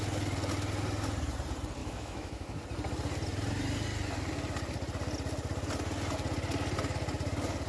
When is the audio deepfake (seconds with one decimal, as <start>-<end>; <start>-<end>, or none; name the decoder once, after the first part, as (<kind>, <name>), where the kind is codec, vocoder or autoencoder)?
1.8-2.6 (autoencoder, DAC-VAE)

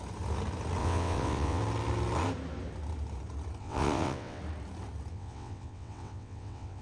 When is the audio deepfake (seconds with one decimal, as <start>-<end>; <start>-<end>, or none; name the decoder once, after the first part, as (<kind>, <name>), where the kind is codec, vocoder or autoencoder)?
0.8-1.6 (vocoder, WaveNeXt); 3.6-4.4; 5.1-6.8

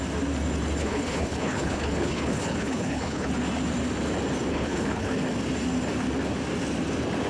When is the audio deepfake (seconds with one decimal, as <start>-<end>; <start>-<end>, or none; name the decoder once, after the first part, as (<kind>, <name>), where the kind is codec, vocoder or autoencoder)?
0.8-3.3 (codec, HILCodec); 4.5-5.1

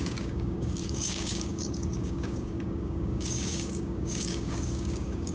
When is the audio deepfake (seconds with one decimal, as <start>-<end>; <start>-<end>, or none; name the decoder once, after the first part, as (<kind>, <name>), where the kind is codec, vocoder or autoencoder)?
0.0-5.3 (codec, DAC)

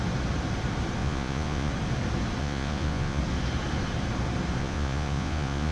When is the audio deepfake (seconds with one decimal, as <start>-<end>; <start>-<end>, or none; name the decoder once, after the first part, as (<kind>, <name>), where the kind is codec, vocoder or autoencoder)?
1.0-1.7 (vocoder, Vocos); 2.4-3.2; 4.6-5.7

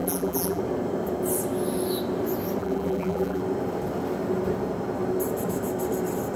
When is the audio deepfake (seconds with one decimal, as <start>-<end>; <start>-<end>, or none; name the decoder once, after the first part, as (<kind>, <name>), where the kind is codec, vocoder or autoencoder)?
0.0-0.6 (vocoder, BigVGAN v2); 2.6-3.4